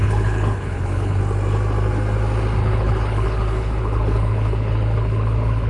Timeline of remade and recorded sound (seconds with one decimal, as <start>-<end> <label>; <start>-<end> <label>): 0.0-1.2 remade; 1.2-2.6 recorded; 2.6-5.7 remade